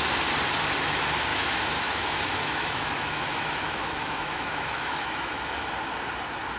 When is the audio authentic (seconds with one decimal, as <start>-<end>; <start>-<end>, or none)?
0.0-1.3; 5.3-6.6